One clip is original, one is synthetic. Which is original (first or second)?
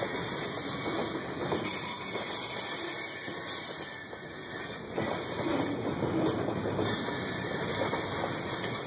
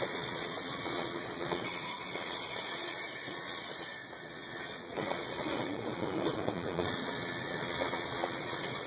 first